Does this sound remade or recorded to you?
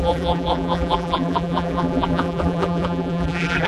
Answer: remade